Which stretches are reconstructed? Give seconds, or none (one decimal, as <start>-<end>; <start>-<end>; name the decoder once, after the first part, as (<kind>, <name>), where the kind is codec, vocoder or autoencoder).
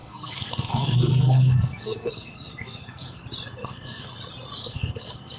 0.0-3.2 (codec, SNAC); 3.6-4.1; 4.6-5.4